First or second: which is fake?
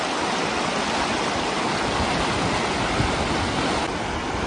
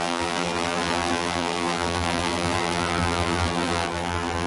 second